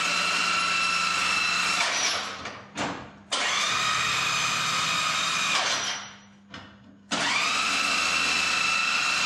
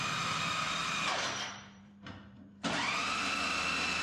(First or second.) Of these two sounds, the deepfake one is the second